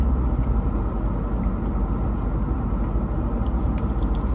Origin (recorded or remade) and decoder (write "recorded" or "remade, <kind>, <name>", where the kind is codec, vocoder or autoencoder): recorded